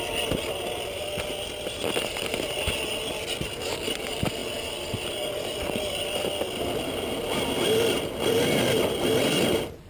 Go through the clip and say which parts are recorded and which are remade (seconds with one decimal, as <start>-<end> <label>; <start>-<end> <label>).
0.0-9.9 recorded